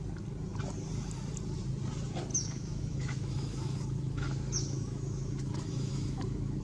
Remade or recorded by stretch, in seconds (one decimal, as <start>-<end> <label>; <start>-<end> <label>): 0.0-2.3 recorded; 2.3-6.6 remade